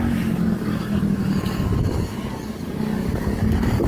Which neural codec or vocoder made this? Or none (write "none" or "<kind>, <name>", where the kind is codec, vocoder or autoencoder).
codec, DAC